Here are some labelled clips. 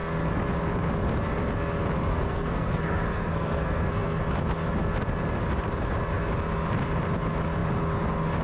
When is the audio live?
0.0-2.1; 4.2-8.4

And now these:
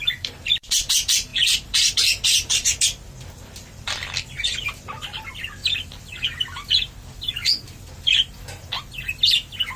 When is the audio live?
5.6-9.8